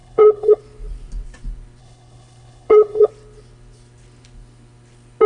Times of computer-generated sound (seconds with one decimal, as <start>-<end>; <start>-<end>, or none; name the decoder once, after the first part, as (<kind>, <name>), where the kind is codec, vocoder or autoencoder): 0.0-0.6 (codec, HILCodec); 1.8-3.1